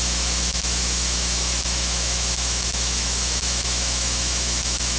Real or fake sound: fake